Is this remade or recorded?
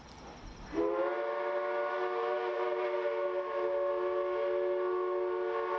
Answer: recorded